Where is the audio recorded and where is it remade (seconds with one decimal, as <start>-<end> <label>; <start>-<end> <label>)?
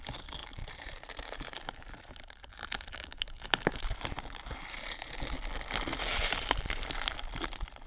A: 0.0-0.4 recorded; 0.4-5.1 remade; 5.1-6.2 recorded; 6.2-7.3 remade; 7.3-7.9 recorded